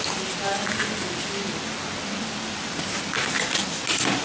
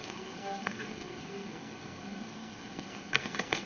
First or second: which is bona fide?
first